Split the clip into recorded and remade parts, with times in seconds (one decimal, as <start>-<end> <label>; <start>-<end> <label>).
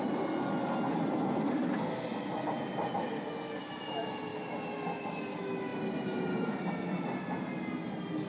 0.0-8.3 recorded